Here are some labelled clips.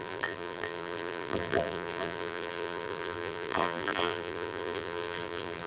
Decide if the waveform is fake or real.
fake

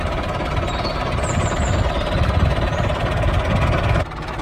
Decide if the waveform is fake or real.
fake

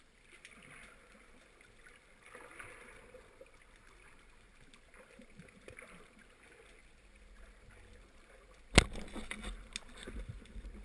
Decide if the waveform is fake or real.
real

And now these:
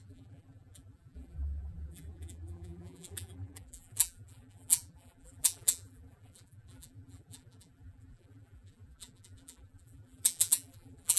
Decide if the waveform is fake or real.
fake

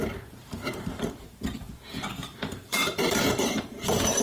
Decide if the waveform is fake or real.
fake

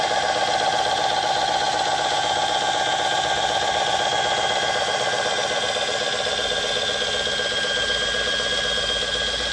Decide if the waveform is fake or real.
real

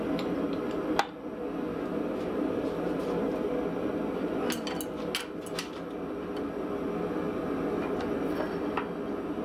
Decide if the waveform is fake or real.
real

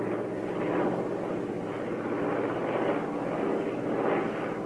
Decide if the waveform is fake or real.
real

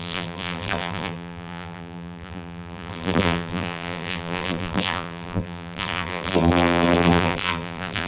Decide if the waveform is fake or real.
fake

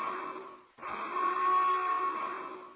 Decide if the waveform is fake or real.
fake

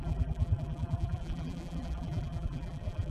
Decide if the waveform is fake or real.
fake